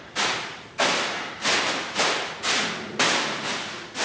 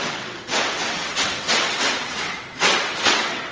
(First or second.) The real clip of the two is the first